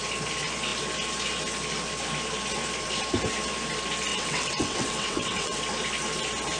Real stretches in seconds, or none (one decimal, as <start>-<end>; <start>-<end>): 0.0-4.1; 5.6-6.6